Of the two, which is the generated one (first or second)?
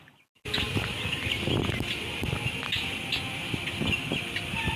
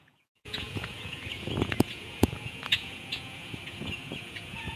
second